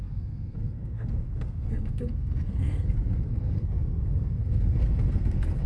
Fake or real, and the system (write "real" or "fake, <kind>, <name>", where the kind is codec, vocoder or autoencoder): fake, codec, SNAC